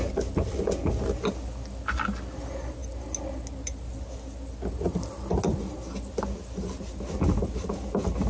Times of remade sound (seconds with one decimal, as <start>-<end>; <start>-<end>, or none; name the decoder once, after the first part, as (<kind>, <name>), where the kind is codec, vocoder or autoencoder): none